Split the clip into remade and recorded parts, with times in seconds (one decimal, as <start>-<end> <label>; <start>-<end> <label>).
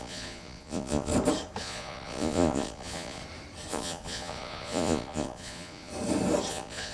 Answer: 0.0-1.1 remade; 1.1-1.6 recorded; 1.6-3.2 remade; 3.2-3.7 recorded; 3.7-5.9 remade; 5.9-6.5 recorded; 6.5-6.9 remade